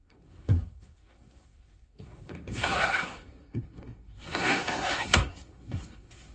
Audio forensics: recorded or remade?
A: remade